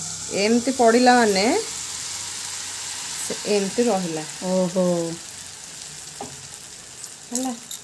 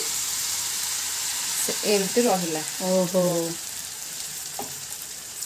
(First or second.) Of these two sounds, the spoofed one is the second